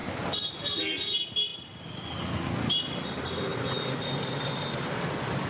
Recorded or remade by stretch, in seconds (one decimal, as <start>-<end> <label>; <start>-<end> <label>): 0.0-5.5 recorded